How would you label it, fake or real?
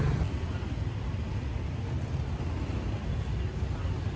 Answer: real